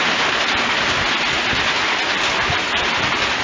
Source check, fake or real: real